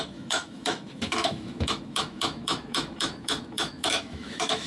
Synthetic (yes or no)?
yes